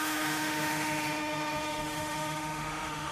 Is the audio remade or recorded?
remade